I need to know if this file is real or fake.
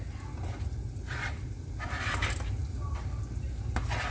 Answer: real